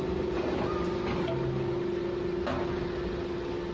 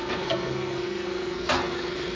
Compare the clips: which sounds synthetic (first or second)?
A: second